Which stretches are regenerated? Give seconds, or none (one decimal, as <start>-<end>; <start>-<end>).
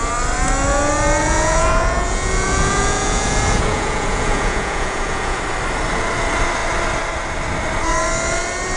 1.2-5.4